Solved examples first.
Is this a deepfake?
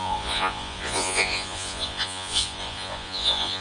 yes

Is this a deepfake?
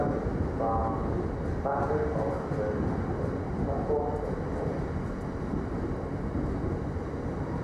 no